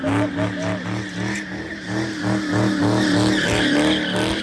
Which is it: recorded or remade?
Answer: recorded